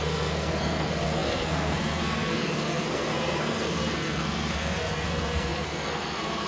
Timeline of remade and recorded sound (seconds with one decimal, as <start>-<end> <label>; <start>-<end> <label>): 0.0-6.5 remade